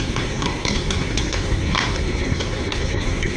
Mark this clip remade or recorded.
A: remade